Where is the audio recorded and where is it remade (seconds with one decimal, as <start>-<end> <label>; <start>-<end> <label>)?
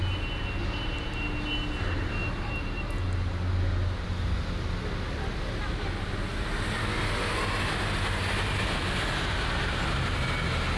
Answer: 0.0-10.8 recorded